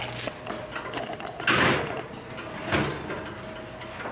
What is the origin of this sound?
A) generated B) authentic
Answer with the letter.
B